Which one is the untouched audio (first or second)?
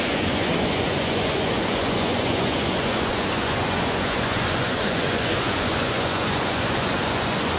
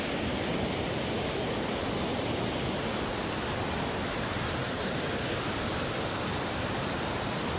second